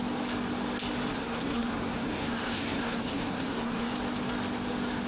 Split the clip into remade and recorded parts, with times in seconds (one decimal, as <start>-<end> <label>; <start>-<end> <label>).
0.0-1.1 recorded; 1.1-3.9 remade; 3.9-5.1 recorded